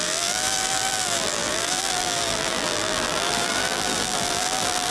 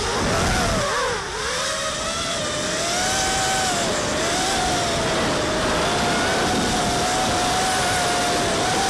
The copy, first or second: first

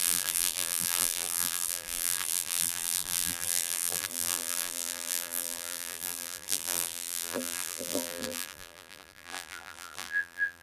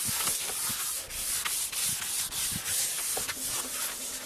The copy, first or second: first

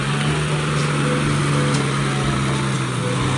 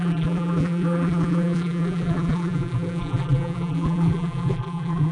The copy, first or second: second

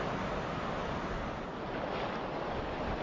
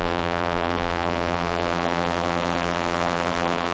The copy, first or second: second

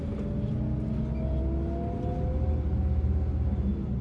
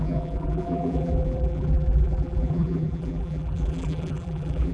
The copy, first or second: second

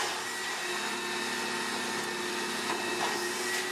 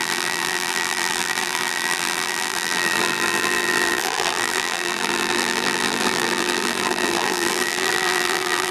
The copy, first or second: second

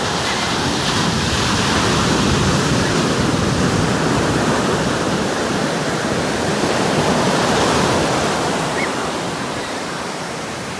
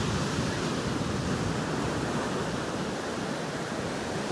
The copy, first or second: first